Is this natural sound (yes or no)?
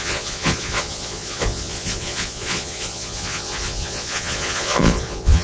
no